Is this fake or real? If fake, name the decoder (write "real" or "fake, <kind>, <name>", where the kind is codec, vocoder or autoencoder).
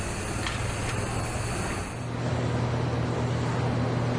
real